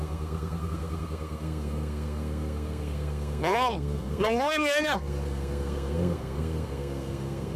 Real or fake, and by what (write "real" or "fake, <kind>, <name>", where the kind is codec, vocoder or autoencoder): fake, codec, SNAC